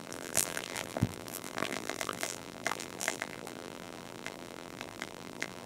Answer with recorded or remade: remade